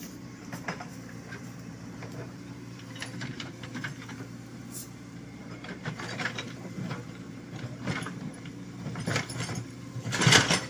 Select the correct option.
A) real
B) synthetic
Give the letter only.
B